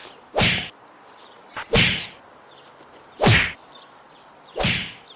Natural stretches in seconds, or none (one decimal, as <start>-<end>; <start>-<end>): 0.0-5.2